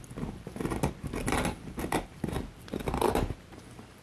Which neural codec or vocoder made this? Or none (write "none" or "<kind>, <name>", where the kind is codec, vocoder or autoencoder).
none